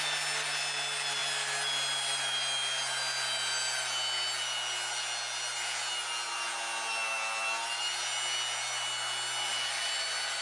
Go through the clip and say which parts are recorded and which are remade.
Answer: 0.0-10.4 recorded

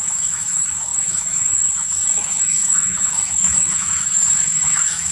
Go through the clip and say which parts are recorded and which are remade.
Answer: 0.0-5.1 remade

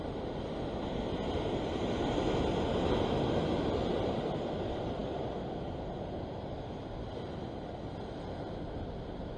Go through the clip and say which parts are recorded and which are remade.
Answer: 0.0-9.4 recorded

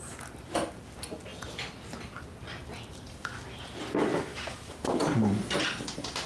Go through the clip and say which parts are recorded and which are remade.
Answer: 0.0-4.1 recorded; 4.1-4.7 remade; 4.7-6.3 recorded

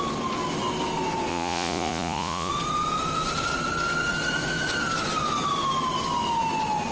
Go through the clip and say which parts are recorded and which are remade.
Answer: 0.0-1.3 recorded; 1.3-2.5 remade; 2.5-6.9 recorded

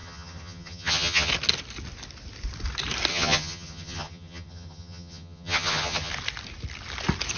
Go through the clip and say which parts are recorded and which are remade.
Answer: 0.0-1.3 remade; 1.3-3.1 recorded; 3.1-6.1 remade; 6.1-7.4 recorded

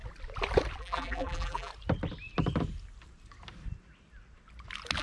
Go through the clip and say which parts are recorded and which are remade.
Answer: 0.0-0.8 recorded; 0.8-1.7 remade; 1.7-5.0 recorded